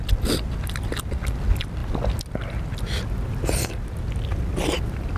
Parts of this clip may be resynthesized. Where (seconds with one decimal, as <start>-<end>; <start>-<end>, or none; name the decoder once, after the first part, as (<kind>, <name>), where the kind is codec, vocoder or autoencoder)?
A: none